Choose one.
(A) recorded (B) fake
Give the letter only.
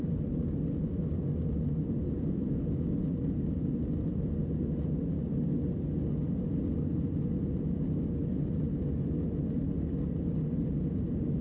A